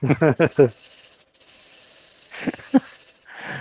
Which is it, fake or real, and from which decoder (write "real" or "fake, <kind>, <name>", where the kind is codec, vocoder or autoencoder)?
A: real